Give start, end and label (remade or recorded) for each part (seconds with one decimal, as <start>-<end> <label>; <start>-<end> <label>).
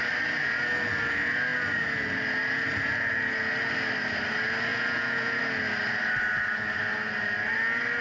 0.0-4.7 recorded; 4.7-5.4 remade; 5.4-8.0 recorded